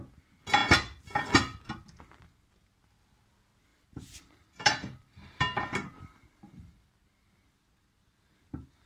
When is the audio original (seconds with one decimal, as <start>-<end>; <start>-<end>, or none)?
0.0-3.7; 6.9-8.9